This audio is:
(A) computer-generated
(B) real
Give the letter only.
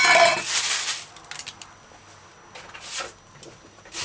B